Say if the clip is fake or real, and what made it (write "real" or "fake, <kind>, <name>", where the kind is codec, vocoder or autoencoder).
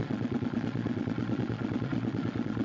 fake, vocoder, Vocos